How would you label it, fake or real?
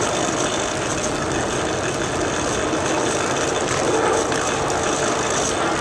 real